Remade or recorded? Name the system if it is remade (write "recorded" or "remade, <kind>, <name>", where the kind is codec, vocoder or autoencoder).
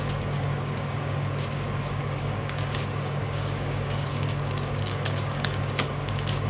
remade, codec, DAC